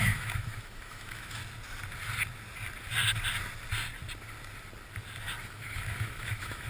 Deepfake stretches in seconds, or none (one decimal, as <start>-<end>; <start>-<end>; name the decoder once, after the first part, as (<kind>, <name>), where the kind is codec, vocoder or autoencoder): 0.0-1.4 (autoencoder, DAC-VAE); 5.4-6.7